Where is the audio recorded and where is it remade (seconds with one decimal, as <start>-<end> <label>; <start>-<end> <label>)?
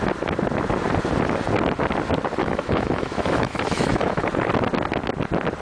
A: 0.0-2.4 recorded; 2.4-4.2 remade; 4.2-5.6 recorded